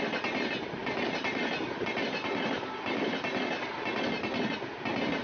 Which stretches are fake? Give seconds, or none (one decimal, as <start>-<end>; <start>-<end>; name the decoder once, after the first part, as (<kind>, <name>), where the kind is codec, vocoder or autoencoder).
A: 0.8-3.6 (vocoder, BigVGAN v2)